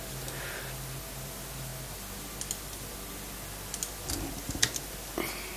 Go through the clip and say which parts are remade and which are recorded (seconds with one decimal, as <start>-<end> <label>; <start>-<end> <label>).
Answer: 0.0-5.6 recorded